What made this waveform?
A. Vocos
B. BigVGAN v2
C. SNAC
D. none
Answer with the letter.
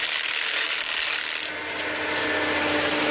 D